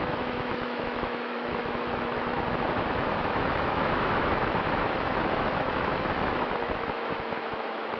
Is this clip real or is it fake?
fake